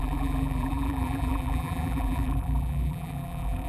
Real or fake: fake